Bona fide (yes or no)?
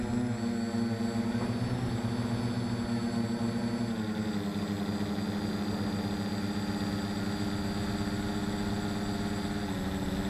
yes